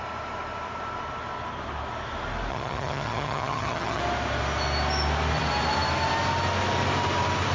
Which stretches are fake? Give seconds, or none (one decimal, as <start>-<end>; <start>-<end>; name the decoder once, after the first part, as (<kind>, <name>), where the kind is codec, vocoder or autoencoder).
2.5-4.0 (vocoder, HiFi-GAN)